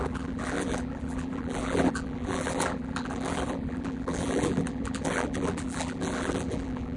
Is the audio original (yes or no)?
no